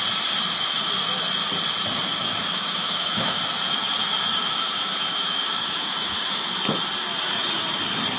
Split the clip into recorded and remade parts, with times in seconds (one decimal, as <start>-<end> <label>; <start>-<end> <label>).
0.0-2.4 recorded; 2.4-3.4 remade; 3.4-4.4 recorded; 4.4-6.5 remade; 6.5-8.2 recorded